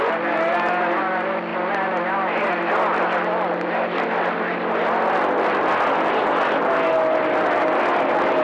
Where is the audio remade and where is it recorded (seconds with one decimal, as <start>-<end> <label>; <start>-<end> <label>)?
0.0-8.4 recorded